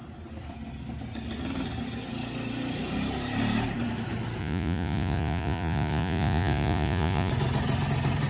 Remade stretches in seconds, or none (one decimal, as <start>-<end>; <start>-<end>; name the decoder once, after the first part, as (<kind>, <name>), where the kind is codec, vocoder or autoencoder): 4.4-7.3 (vocoder, Vocos)